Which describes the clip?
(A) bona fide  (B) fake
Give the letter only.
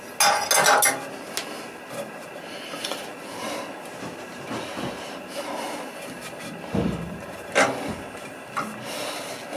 A